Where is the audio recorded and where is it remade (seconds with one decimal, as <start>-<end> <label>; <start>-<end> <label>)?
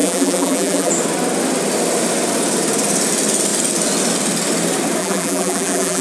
0.0-0.9 remade; 0.9-5.0 recorded; 5.0-6.0 remade